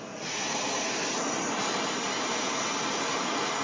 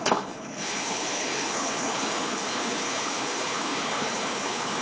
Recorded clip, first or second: first